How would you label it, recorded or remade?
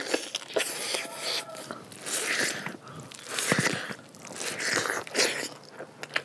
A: recorded